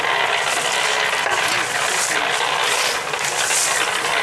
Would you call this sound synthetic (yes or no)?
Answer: no